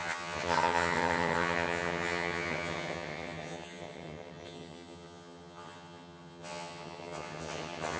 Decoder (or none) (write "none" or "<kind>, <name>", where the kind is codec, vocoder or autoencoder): vocoder, HiFi-GAN